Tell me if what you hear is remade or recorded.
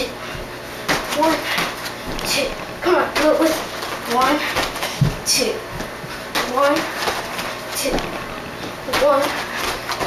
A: recorded